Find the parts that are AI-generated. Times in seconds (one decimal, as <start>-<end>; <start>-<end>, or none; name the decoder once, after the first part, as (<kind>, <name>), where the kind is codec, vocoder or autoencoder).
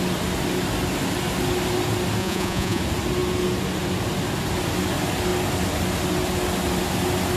2.2-2.8 (vocoder, Vocos)